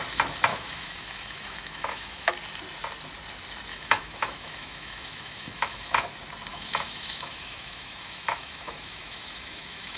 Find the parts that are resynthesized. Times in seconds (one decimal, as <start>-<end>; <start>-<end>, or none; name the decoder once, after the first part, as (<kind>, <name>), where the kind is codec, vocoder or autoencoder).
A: 0.5-2.3 (autoencoder, DAC-VAE); 3.7-6.1; 6.5-10.0